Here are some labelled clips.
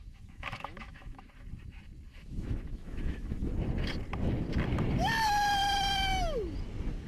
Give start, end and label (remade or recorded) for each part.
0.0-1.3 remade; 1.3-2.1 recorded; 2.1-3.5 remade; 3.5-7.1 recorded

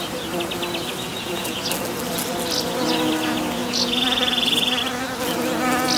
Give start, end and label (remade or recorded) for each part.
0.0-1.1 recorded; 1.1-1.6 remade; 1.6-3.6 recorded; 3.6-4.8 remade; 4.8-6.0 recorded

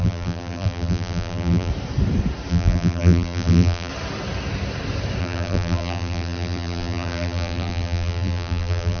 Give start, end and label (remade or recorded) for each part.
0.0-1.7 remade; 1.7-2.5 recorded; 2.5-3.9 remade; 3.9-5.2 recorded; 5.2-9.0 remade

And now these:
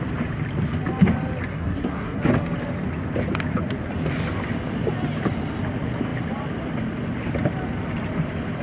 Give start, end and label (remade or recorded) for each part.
0.0-1.5 recorded; 1.5-2.2 remade; 2.2-8.6 recorded

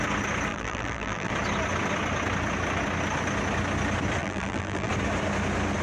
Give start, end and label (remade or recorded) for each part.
0.0-0.5 recorded; 0.5-1.3 remade; 1.3-4.2 recorded; 4.2-4.9 remade; 4.9-5.8 recorded

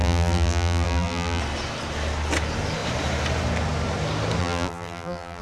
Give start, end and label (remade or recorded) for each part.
0.0-1.4 remade; 1.4-4.4 recorded; 4.4-5.4 remade

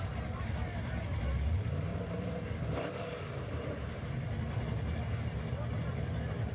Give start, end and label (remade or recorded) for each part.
0.0-1.9 recorded; 1.9-4.0 remade; 4.0-6.5 recorded